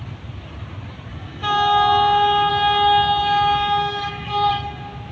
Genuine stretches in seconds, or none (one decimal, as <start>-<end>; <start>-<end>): 0.0-1.1; 2.5-3.2; 4.5-5.1